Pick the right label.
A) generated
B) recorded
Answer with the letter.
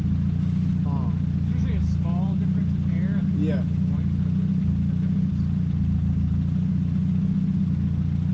B